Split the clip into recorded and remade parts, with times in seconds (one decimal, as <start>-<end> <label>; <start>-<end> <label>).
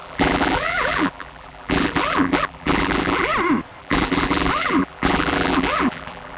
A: 0.0-3.3 remade; 3.3-3.8 recorded; 3.8-6.4 remade